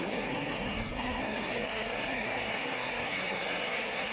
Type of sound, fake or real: fake